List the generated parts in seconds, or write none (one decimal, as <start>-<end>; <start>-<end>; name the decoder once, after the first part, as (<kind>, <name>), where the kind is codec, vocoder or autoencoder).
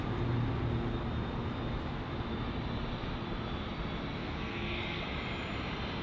4.2-5.0 (codec, SNAC)